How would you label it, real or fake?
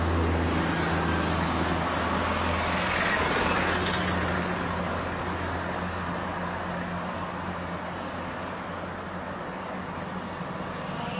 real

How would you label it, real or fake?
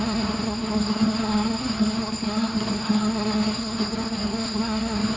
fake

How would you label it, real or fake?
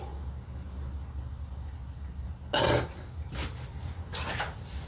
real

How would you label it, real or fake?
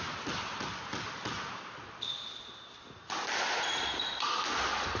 real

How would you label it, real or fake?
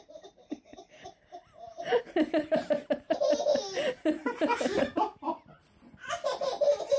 real